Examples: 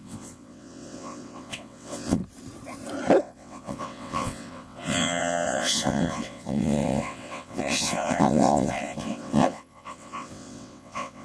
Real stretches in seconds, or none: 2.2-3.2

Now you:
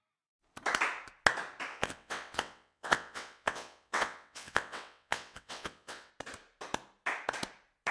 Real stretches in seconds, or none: 0.0-1.7; 6.1-7.9

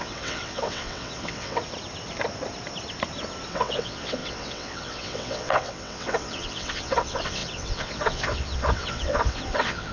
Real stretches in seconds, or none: 1.6-3.5

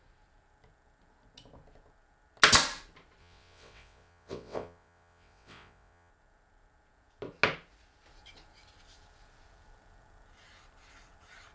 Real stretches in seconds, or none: 0.0-3.2; 6.1-11.5

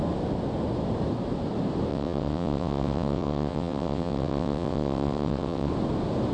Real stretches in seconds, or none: 0.0-1.9; 5.7-6.3